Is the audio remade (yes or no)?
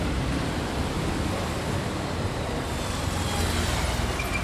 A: no